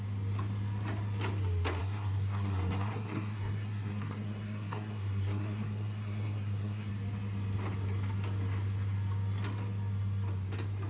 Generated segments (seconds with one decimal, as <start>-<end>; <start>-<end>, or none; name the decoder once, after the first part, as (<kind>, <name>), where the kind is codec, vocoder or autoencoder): 1.8-6.9 (codec, SNAC)